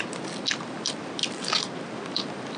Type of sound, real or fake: real